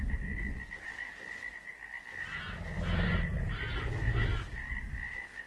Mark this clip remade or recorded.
recorded